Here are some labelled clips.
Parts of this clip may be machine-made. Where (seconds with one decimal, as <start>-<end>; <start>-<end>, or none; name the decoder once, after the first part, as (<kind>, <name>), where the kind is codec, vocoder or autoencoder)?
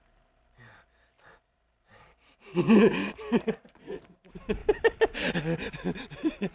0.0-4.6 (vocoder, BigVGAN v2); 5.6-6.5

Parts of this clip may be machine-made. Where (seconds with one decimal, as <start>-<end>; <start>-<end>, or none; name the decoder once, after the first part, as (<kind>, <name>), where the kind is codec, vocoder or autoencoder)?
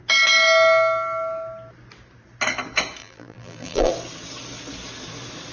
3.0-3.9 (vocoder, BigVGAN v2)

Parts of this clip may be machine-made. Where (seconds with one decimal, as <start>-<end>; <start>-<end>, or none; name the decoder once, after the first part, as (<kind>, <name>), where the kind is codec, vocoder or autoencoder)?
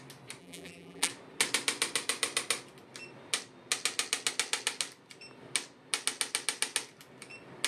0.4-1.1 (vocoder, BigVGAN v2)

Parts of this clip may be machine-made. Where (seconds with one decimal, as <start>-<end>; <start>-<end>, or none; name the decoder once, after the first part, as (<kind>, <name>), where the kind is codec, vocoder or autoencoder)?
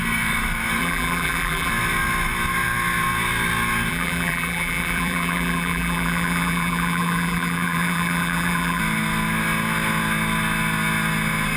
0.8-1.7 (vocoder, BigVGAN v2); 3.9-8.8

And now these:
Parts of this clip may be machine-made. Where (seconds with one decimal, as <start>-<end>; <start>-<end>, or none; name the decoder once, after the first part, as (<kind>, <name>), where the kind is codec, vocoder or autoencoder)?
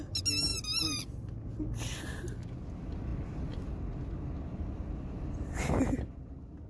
none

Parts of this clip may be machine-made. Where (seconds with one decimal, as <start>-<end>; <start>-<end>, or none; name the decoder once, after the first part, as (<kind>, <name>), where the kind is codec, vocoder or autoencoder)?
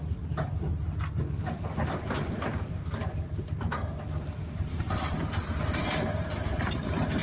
none